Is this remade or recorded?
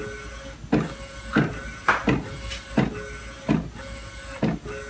recorded